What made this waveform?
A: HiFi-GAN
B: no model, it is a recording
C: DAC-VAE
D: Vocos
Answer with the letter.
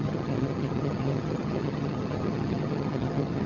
A